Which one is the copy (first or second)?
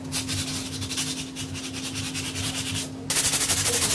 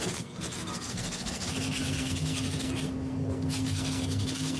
second